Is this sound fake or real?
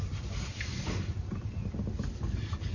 real